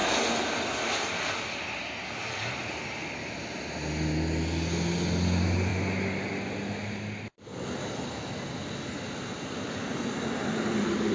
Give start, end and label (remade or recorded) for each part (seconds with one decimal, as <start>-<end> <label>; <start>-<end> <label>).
0.0-11.1 recorded